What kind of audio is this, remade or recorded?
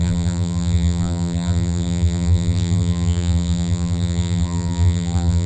remade